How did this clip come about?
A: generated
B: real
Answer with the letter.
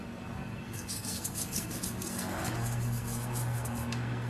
A